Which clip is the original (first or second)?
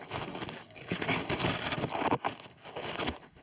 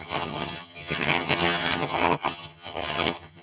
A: first